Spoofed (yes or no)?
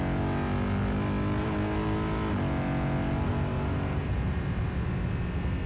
no